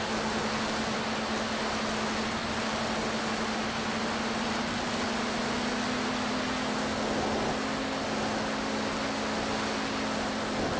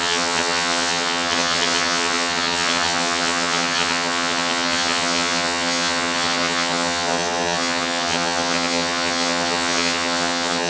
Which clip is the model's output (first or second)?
second